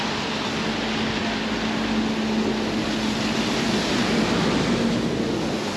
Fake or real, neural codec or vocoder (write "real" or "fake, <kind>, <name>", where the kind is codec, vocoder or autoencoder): real